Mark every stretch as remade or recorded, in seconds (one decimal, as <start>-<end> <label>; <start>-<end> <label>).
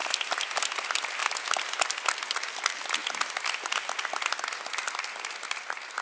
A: 0.0-6.0 recorded